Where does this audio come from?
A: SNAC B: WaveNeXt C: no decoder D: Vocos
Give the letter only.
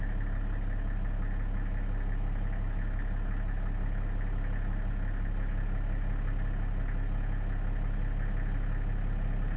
C